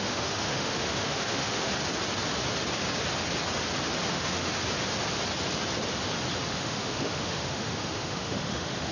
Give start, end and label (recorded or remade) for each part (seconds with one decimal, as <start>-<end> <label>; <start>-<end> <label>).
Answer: 0.0-1.7 remade; 1.7-4.1 recorded; 4.1-4.6 remade; 4.6-6.5 recorded; 6.5-8.9 remade